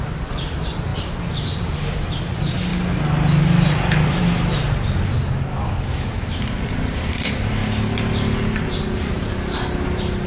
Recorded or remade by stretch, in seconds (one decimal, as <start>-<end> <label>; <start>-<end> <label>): 0.0-5.5 recorded; 5.5-6.4 remade; 6.4-10.3 recorded